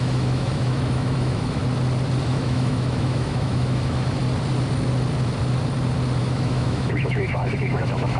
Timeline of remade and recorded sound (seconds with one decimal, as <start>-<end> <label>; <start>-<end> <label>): 0.0-1.6 remade; 1.6-2.2 recorded; 2.2-4.2 remade; 4.2-6.2 recorded; 6.2-8.2 remade